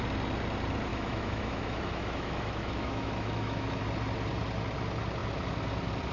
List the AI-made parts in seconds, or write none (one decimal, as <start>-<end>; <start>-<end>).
0.9-3.8